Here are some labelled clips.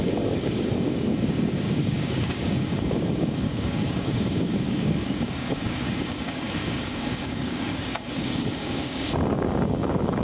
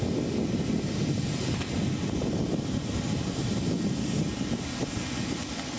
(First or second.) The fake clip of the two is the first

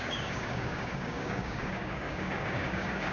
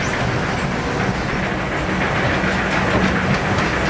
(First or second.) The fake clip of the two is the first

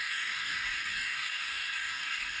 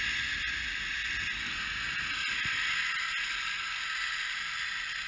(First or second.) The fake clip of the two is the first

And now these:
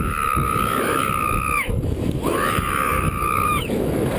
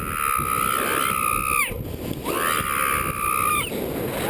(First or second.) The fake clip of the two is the first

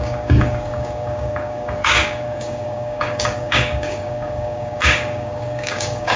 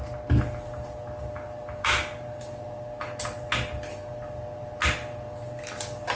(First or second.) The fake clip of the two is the first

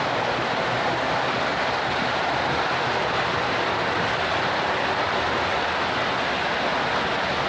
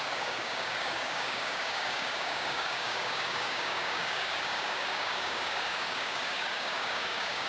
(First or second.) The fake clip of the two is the second